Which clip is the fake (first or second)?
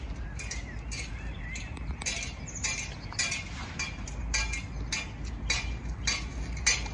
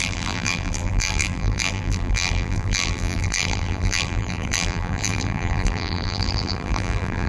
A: second